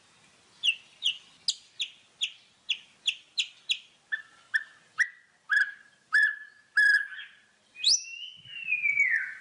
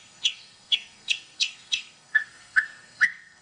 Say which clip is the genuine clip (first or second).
first